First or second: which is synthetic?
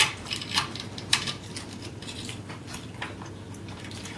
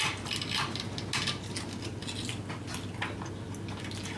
first